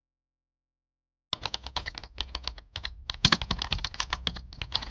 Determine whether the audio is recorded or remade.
recorded